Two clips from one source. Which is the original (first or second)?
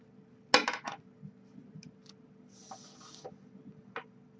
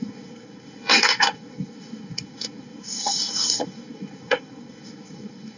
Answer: first